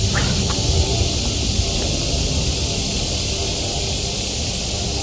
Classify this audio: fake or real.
real